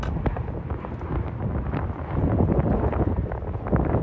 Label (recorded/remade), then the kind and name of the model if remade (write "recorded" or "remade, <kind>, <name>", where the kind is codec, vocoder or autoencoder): recorded